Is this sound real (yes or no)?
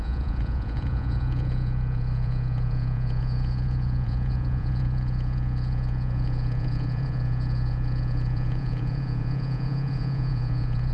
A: no